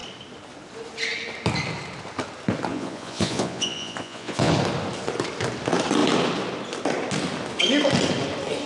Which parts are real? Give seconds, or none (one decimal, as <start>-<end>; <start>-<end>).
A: 0.0-2.7; 4.5-8.7